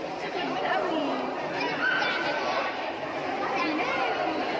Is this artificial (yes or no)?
no